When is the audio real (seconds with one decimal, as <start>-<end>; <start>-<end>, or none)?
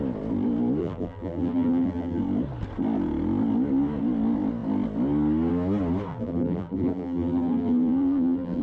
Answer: 0.0-0.8; 2.2-6.1